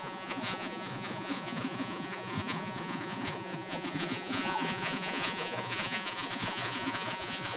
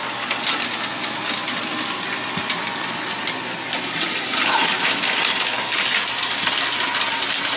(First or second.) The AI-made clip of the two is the first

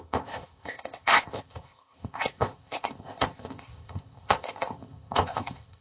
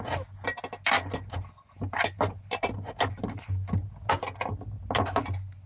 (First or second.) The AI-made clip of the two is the first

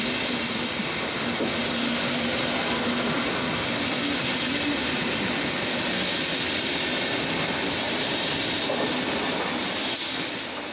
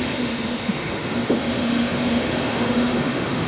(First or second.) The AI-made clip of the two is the second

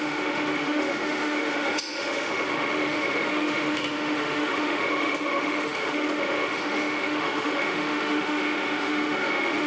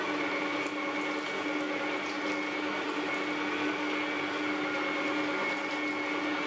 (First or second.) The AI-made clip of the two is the first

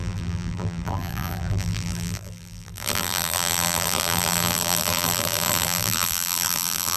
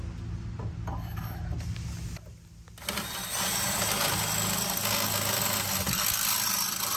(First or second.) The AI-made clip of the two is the first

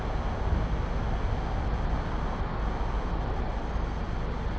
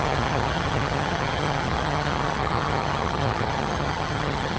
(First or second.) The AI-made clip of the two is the second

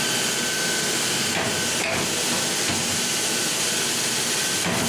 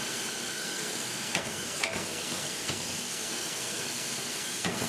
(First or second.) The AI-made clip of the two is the second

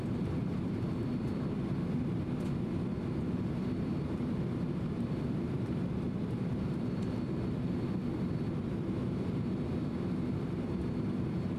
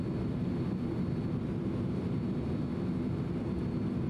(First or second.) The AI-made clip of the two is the first